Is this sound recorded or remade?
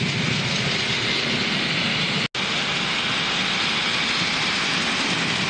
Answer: recorded